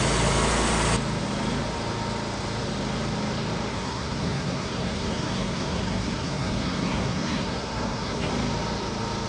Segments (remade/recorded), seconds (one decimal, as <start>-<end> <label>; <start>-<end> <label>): 0.0-3.7 recorded; 3.7-8.3 remade; 8.3-9.3 recorded

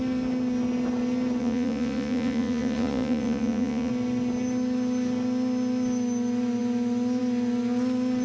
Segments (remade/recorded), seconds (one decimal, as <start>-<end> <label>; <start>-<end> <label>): 0.0-1.4 recorded; 1.4-3.9 remade; 3.9-8.2 recorded

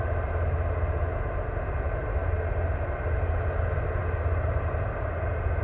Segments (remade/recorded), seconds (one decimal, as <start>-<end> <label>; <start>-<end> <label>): 0.0-5.6 recorded

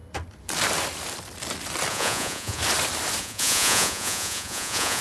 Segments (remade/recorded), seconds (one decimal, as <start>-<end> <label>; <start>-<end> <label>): 0.0-1.9 recorded; 1.9-2.6 remade; 2.6-3.2 recorded; 3.2-5.0 remade

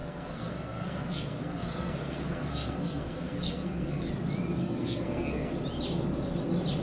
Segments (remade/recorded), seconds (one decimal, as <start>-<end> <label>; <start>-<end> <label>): 0.0-4.1 remade; 4.1-4.6 recorded; 4.6-5.5 remade; 5.5-6.8 recorded

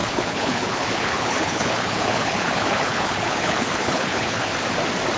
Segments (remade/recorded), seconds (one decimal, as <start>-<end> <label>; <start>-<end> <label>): 0.0-4.5 remade; 4.5-5.2 recorded

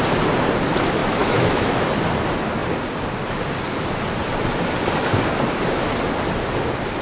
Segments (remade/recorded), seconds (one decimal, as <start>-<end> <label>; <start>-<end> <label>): 0.0-1.0 recorded; 1.0-1.9 remade; 1.9-7.0 recorded